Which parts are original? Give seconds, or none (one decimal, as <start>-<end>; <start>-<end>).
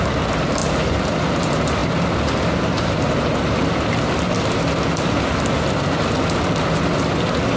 0.0-7.6